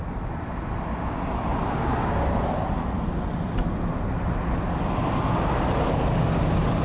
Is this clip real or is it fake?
real